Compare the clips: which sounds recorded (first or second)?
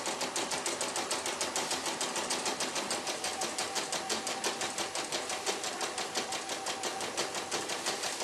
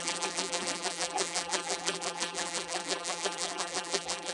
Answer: first